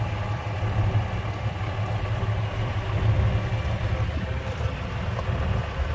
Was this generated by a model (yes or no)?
no